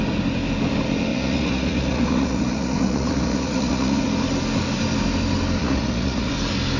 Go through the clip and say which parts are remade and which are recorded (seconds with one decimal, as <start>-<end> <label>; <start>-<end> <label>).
0.0-1.1 recorded; 1.1-4.0 remade; 4.0-5.6 recorded; 5.6-6.3 remade; 6.3-6.8 recorded